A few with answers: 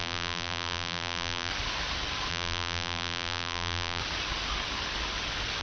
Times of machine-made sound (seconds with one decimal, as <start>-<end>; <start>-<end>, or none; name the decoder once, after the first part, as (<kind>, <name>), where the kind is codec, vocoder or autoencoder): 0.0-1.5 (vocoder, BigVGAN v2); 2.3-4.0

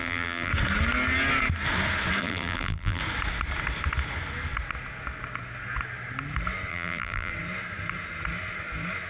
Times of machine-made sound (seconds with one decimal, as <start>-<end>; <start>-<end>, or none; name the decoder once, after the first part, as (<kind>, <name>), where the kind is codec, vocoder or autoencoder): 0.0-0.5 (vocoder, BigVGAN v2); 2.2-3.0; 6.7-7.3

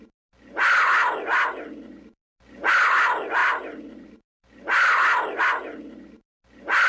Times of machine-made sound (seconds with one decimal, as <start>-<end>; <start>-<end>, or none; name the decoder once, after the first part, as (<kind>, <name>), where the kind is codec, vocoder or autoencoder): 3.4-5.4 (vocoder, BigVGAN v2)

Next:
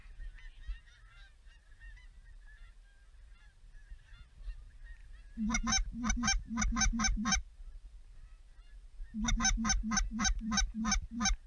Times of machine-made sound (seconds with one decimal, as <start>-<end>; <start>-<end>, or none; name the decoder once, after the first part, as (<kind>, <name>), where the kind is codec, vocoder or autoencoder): 0.8-5.0 (vocoder, BigVGAN v2); 6.1-8.5; 10.2-11.5

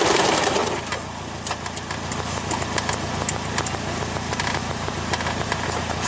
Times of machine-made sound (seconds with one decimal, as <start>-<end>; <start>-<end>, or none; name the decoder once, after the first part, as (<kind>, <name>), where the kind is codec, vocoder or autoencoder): 0.0-0.6 (vocoder, BigVGAN v2); 4.3-6.1

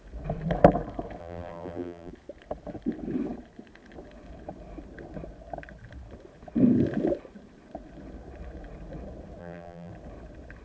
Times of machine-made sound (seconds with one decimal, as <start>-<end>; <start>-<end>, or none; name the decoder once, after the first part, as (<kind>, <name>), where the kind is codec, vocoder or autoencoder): 1.2-2.1 (vocoder, BigVGAN v2); 9.4-9.9

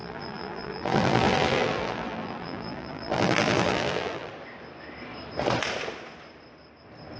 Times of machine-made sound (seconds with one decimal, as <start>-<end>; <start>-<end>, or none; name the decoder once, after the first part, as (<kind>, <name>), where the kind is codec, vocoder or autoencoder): 0.0-4.3 (vocoder, BigVGAN v2)

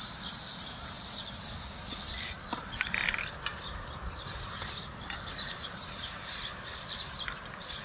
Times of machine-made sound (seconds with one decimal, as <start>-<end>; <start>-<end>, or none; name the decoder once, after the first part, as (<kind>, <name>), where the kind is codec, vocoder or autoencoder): 3.5-6.1 (vocoder, BigVGAN v2)